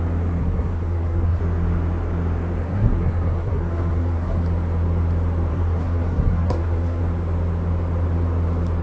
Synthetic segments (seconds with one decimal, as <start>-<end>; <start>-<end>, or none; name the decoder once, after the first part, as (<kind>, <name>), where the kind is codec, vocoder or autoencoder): 0.4-1.4 (codec, SNAC); 2.6-4.4; 5.5-7.0